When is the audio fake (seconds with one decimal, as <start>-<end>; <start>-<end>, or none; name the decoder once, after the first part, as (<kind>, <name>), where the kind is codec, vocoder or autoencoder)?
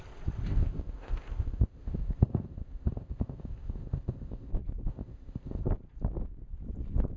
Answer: 0.5-4.5 (codec, ZipCodec); 4.9-5.6